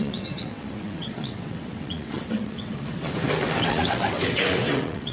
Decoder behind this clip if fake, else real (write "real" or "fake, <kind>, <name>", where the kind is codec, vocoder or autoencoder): fake, vocoder, WaveNeXt